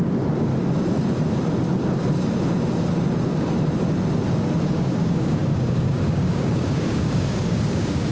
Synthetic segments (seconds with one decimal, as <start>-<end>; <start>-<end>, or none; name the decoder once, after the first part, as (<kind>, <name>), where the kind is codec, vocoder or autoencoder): 0.0-0.5 (codec, DAC); 4.6-8.1